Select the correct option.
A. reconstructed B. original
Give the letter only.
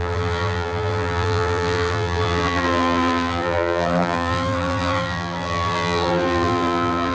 A